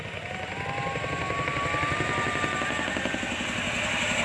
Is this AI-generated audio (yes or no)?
no